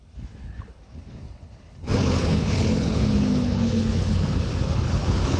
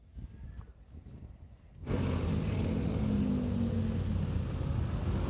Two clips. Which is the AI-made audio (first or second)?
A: first